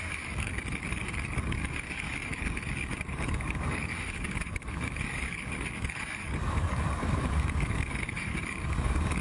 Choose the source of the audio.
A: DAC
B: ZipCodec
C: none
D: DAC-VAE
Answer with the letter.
A